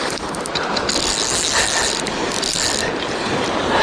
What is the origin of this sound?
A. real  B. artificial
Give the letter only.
A